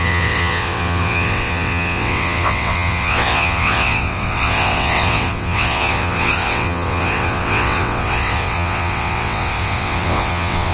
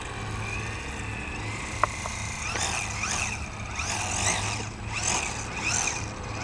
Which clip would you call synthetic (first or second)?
first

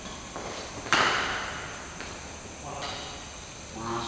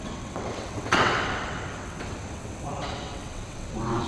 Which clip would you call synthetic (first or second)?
second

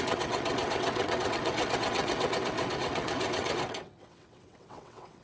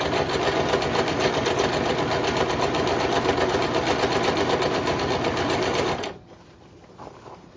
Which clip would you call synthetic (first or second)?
first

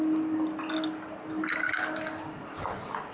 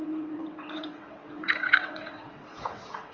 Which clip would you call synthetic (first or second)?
second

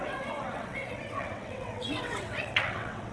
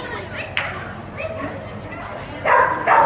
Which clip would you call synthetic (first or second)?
first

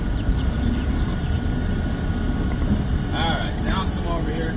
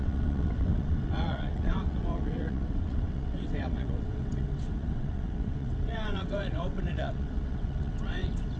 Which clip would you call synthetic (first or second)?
second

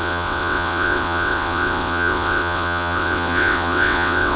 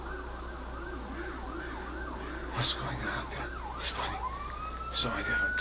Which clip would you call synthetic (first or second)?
first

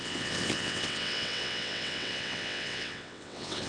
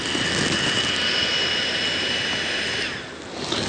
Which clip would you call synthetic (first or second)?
first